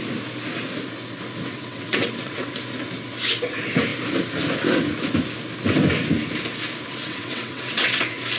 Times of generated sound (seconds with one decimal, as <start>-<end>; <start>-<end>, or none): 1.5-2.5; 6.9-8.0